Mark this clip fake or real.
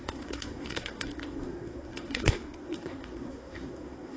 fake